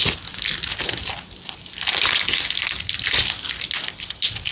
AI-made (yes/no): no